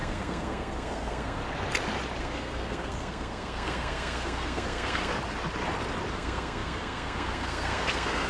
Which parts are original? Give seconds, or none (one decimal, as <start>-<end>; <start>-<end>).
1.4-2.2; 5.1-6.1